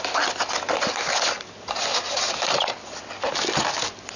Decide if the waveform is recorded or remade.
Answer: recorded